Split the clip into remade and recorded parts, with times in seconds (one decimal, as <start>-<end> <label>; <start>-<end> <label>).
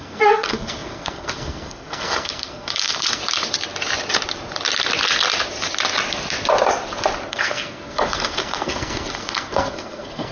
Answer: 0.0-3.2 remade; 3.2-7.3 recorded; 7.3-10.3 remade